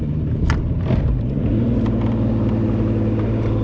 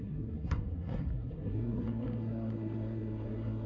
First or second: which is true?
first